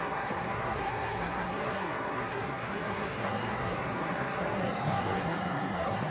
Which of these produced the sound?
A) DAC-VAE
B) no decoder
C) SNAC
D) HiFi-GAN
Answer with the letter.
C